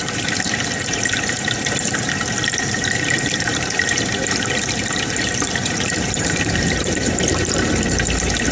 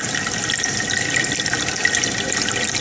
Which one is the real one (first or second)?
second